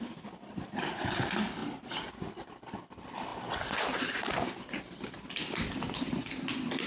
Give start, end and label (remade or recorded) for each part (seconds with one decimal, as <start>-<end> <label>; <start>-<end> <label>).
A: 0.0-6.9 recorded